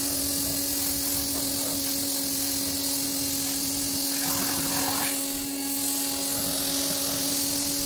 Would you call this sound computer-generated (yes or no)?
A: no